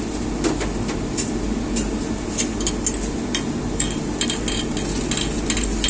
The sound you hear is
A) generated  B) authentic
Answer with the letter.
B